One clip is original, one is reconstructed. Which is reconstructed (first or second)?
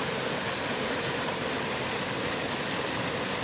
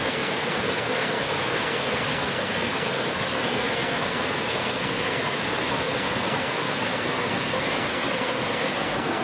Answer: second